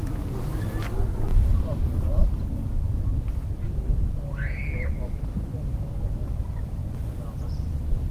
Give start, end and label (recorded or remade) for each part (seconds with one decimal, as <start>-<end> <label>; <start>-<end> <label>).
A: 0.0-1.3 recorded; 1.3-1.8 remade; 1.8-6.8 recorded; 6.8-8.1 remade